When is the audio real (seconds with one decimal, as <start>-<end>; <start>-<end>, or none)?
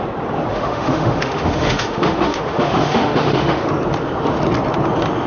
0.0-0.5; 3.7-5.3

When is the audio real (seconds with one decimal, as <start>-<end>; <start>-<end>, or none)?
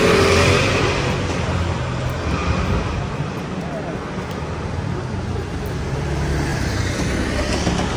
0.0-8.0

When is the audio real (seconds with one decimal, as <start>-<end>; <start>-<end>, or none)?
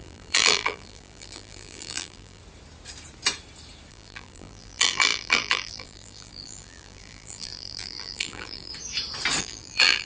2.4-3.9; 8.7-9.4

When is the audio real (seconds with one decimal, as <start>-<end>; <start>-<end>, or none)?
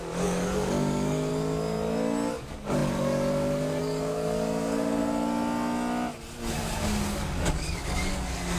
1.3-2.3; 5.0-6.5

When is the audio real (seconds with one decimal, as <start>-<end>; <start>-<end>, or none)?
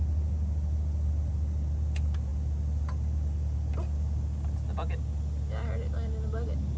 0.0-6.8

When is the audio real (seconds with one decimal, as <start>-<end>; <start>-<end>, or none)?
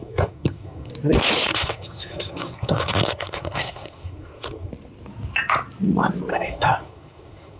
0.9-1.5; 4.7-6.3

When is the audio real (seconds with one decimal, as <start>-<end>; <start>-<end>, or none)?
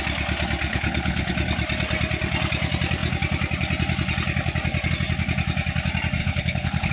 0.0-0.7; 1.3-6.2